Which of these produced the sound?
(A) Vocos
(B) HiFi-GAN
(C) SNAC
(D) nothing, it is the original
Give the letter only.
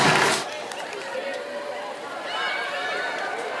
D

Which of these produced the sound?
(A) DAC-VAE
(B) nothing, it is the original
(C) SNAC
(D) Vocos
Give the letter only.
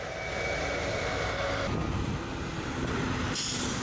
B